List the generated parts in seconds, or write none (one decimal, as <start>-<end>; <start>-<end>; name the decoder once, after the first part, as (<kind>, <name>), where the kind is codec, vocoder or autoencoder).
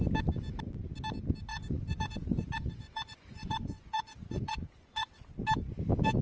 1.5-5.2 (vocoder, Vocos)